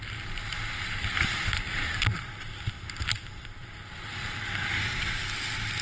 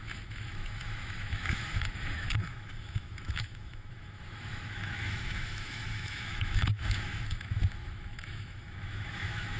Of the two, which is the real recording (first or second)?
first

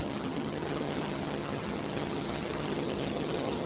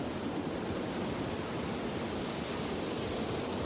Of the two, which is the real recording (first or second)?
second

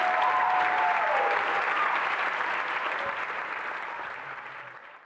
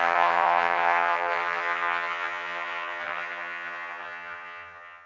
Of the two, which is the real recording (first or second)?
first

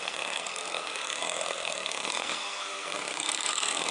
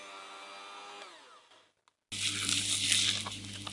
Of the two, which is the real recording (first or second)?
second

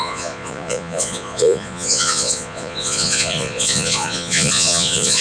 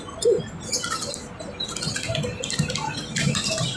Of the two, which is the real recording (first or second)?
second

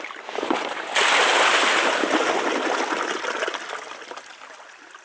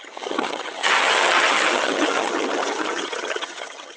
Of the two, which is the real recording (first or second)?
first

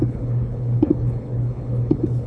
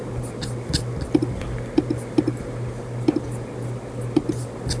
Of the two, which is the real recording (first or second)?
second